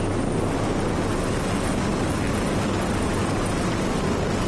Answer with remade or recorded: recorded